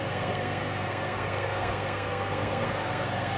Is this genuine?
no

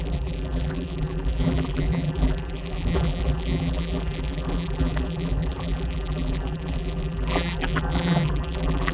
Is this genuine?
no